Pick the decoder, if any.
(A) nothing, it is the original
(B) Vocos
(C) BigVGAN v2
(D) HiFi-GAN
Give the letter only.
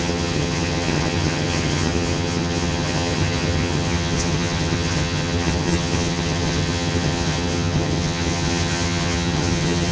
D